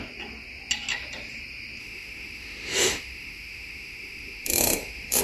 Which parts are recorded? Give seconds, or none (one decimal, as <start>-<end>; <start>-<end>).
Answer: 0.0-1.8